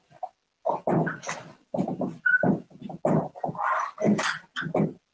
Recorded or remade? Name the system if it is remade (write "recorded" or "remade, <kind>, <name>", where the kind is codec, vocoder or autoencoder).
recorded